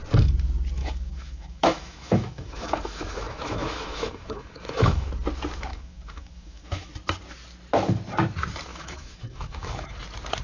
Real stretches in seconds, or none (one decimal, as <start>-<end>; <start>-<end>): 0.0-0.8; 5.1-5.7; 6.9-8.7; 10.0-10.4